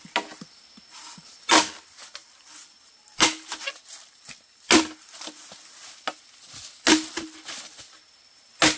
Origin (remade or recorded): recorded